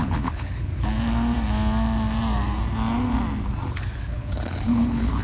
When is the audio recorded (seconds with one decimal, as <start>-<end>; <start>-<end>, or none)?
0.7-3.7

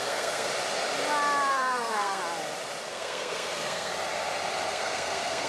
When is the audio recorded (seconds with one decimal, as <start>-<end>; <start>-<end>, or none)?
0.5-1.5; 2.2-2.9; 3.9-4.7

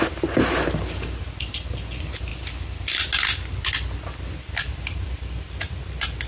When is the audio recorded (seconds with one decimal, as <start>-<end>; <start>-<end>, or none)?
0.0-6.3

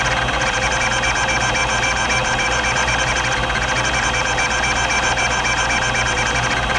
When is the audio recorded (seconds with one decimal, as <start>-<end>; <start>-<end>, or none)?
0.0-2.2; 3.0-6.8

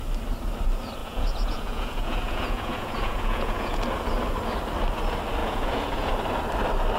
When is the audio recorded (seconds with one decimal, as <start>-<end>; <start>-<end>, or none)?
0.0-1.0; 3.8-5.4; 6.1-7.0

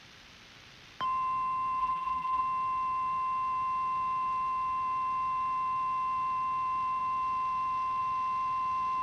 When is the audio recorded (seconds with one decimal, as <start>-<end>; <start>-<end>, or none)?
0.0-1.8; 2.4-9.0

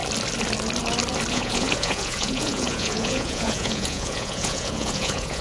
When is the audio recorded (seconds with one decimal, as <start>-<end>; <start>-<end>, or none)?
0.0-1.3

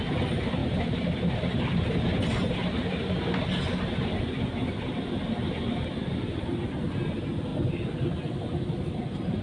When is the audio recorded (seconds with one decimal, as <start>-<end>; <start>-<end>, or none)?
0.0-0.6; 3.2-7.5